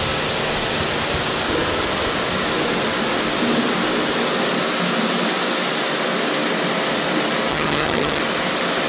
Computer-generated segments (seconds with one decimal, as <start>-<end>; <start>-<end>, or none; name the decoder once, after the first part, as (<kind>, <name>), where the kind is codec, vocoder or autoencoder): 7.5-8.2 (vocoder, HiFi-GAN)